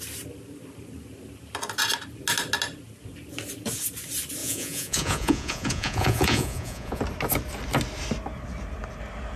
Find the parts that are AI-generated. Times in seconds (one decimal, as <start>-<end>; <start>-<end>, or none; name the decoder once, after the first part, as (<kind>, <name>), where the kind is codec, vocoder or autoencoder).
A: 4.4-7.0 (vocoder, Vocos)